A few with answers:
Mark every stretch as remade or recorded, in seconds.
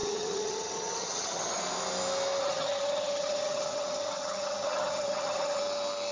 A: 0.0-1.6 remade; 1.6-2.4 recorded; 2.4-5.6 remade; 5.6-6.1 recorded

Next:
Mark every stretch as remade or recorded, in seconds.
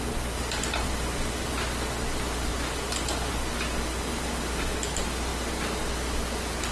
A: 0.0-6.7 recorded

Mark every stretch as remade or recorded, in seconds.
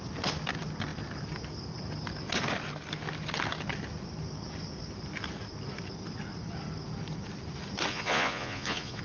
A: 0.0-7.9 recorded; 7.9-9.0 remade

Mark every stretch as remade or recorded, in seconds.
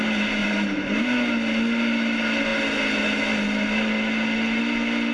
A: 0.0-0.4 recorded; 0.4-1.0 remade; 1.0-5.1 recorded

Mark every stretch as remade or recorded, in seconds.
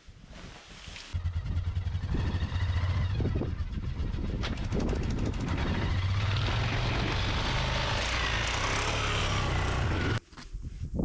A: 0.0-11.0 recorded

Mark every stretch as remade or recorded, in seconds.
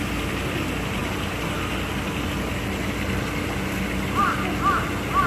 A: 0.0-5.3 recorded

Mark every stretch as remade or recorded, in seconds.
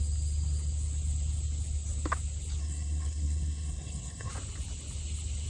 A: 0.0-2.6 recorded; 2.6-4.3 remade; 4.3-5.5 recorded